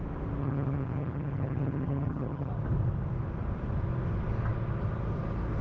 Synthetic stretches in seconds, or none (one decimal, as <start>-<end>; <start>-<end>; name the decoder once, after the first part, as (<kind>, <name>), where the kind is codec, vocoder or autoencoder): 0.4-2.5 (vocoder, HiFi-GAN)